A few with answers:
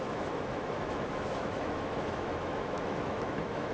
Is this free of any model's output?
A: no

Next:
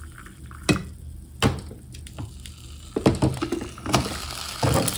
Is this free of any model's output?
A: yes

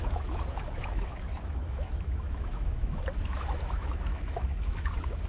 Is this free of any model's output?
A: no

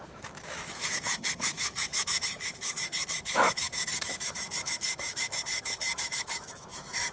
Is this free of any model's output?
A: no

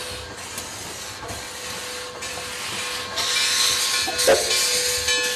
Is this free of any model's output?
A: yes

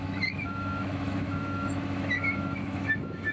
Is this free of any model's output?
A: no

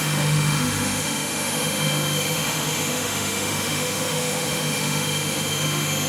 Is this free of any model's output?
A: no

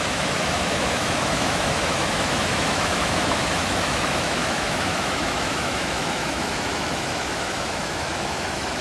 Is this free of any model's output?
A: no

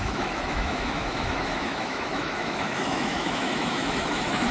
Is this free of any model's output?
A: no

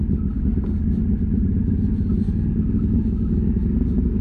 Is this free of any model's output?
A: yes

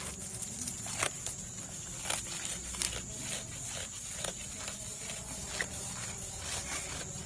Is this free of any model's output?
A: yes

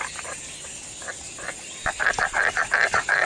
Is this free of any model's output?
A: yes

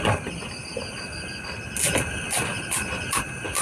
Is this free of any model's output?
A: yes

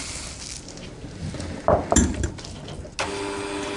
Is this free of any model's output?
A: yes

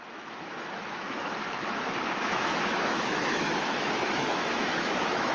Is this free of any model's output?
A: no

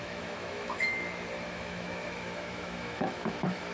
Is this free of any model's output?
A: no